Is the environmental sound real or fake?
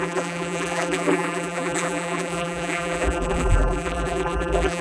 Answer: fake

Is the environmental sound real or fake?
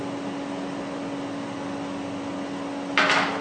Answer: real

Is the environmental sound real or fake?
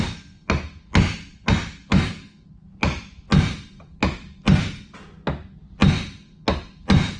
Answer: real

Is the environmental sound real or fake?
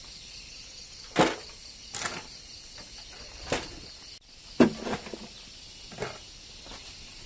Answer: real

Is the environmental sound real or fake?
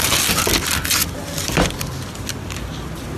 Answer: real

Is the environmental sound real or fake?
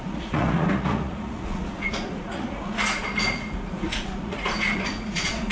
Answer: fake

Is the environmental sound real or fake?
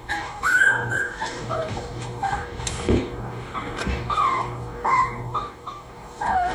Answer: fake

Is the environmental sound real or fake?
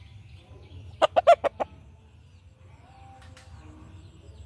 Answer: real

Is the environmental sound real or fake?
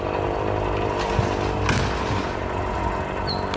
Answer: real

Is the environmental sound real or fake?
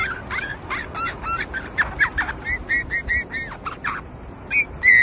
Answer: real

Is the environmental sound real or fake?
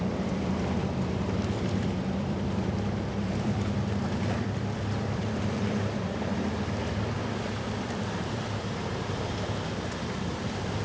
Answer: fake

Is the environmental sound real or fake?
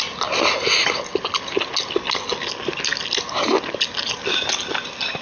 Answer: real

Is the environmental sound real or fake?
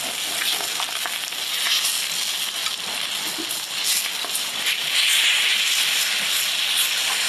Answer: real